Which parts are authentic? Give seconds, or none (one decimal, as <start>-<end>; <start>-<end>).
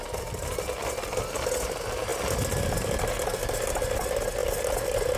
0.0-5.2